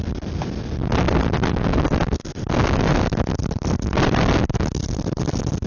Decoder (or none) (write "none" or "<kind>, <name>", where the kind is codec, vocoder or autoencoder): none